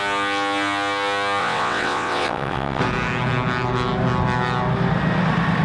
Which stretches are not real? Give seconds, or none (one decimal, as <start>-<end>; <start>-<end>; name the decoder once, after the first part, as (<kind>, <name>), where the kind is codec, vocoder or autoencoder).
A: 1.4-2.8 (vocoder, WaveNeXt)